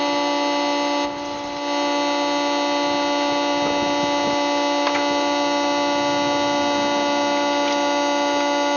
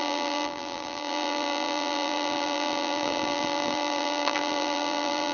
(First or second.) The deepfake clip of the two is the second